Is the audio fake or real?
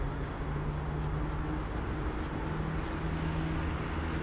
real